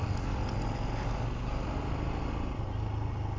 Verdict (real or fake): real